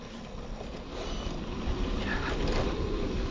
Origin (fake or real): real